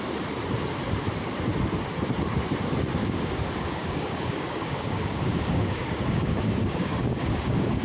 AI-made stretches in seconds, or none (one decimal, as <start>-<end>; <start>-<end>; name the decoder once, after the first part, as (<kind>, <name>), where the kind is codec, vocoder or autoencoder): 3.0-7.8 (codec, DAC)